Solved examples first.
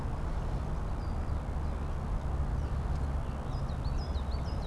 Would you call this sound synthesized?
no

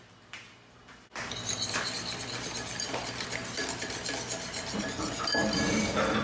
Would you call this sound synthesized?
no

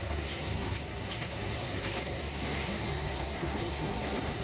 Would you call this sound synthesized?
yes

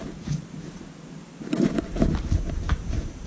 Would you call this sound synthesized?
no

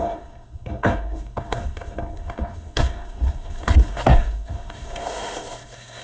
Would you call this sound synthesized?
yes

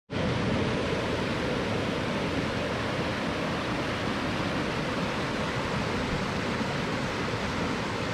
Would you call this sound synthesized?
no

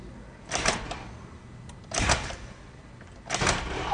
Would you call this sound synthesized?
no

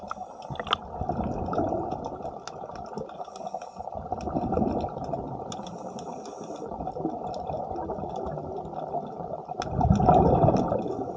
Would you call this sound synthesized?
no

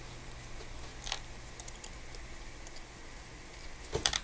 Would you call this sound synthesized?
no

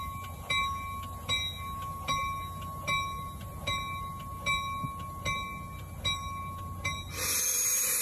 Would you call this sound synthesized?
no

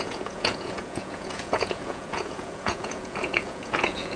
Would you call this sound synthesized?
yes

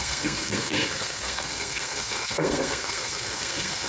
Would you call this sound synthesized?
yes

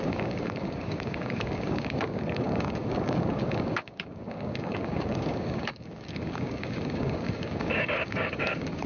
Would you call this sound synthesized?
yes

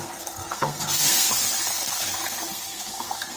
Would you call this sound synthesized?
yes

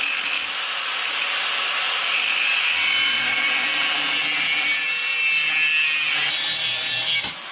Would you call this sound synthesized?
no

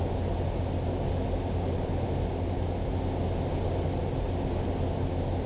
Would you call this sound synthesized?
no